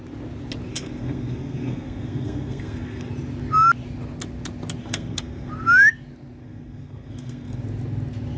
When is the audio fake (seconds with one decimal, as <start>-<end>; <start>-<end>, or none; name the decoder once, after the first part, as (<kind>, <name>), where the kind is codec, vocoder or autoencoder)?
0.7-3.1 (codec, SNAC); 4.8-5.5; 6.4-7.6